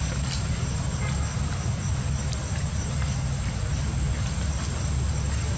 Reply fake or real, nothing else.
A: real